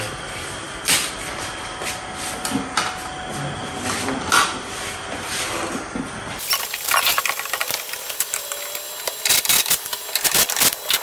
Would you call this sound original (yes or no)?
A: yes